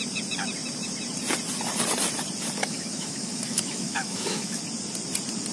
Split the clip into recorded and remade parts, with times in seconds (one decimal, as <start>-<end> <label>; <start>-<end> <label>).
0.0-2.6 recorded; 2.6-4.6 remade; 4.6-5.5 recorded